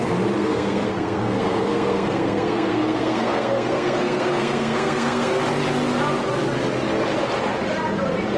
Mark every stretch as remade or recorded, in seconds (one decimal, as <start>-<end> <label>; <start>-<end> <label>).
0.0-0.4 recorded; 0.4-5.4 remade; 5.4-8.4 recorded